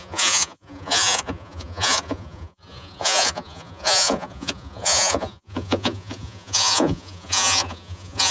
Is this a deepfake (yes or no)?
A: yes